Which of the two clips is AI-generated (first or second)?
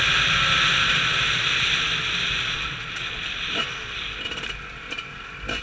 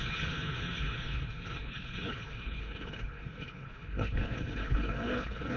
second